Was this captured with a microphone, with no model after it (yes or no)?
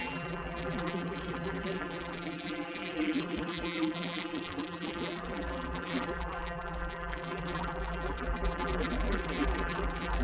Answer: no